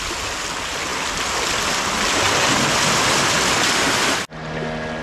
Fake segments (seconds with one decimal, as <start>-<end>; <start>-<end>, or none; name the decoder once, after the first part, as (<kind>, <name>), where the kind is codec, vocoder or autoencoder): none

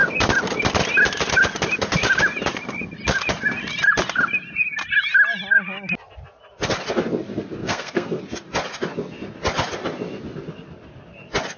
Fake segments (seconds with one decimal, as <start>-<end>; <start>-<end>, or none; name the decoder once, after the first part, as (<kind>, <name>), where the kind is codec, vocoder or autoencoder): 7.6-8.2 (codec, SNAC)

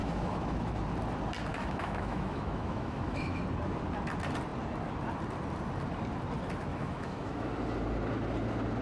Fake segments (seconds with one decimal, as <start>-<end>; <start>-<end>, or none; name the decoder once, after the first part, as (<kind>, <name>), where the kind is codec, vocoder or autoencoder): 0.0-0.8 (autoencoder, DAC-VAE); 1.5-3.4; 6.7-7.5

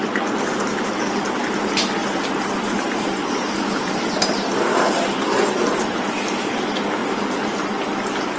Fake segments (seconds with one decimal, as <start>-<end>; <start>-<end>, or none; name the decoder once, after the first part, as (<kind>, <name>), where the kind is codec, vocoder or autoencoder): 2.0-6.2 (vocoder, BigVGAN v2); 7.0-7.6

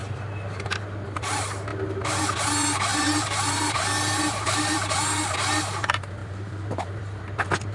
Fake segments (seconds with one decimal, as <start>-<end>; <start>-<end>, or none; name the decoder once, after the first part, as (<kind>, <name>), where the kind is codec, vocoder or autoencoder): 2.9-4.9 (vocoder, BigVGAN v2); 6.2-7.0

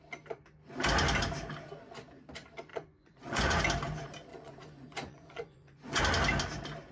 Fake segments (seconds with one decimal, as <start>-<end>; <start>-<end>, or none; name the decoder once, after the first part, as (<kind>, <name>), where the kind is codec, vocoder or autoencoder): 2.7-3.6 (vocoder, Vocos); 4.3-6.0

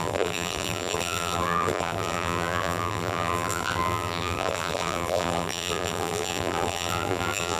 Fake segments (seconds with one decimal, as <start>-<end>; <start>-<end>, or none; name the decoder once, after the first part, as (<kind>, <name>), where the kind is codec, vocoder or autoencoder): 0.0-7.6 (vocoder, BigVGAN v2)